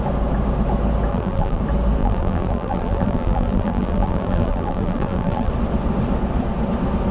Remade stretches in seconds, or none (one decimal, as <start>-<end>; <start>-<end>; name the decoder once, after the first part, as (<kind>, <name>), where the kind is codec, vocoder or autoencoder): 1.1-1.6 (vocoder, BigVGAN v2); 2.0-5.5

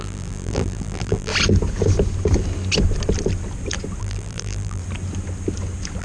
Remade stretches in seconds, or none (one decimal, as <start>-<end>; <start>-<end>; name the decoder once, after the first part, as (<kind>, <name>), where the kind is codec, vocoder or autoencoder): 0.0-1.3 (vocoder, BigVGAN v2); 4.0-4.8

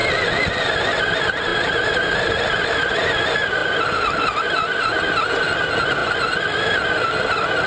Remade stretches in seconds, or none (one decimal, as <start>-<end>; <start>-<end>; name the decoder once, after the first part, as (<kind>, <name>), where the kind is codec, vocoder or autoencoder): 1.5-2.3 (vocoder, BigVGAN v2)

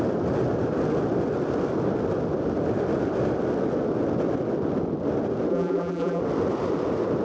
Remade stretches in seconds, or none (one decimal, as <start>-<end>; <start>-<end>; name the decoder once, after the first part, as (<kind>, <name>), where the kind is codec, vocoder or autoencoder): 5.5-6.2 (vocoder, BigVGAN v2)

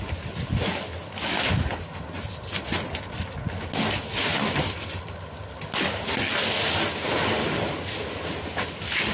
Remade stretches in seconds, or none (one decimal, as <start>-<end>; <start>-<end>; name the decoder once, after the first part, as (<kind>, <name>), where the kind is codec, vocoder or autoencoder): 4.3-5.0 (vocoder, BigVGAN v2)

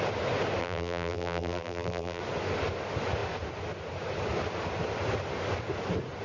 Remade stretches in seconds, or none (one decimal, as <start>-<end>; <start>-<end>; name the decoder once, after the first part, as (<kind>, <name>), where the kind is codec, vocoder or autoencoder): 0.6-2.2 (vocoder, BigVGAN v2)

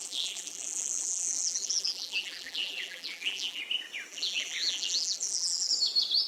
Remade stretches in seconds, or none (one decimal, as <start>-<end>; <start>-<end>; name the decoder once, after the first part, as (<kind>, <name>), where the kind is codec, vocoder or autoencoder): 0.0-3.6 (vocoder, BigVGAN v2); 4.1-5.7

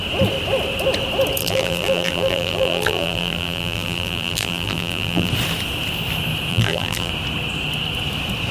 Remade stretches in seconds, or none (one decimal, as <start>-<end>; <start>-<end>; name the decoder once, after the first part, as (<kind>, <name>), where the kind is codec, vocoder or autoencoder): 1.4-5.3 (vocoder, BigVGAN v2); 6.5-7.1